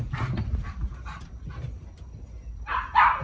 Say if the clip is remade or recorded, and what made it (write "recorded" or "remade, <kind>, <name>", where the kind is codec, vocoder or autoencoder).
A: recorded